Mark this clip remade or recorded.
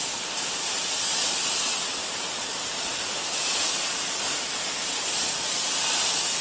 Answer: recorded